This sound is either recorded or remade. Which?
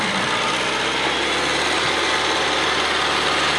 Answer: recorded